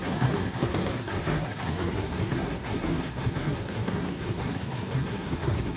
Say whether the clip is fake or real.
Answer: fake